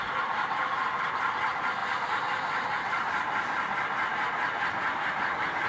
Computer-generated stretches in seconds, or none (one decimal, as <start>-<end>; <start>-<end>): 0.0-5.7